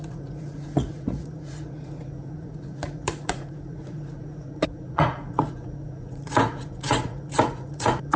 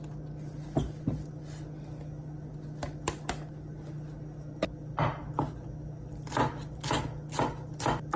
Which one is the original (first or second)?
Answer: second